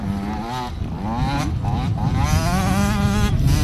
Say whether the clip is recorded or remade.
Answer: recorded